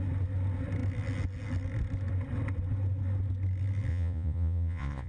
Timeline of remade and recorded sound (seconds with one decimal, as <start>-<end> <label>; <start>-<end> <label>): 0.0-3.9 recorded; 3.9-5.1 remade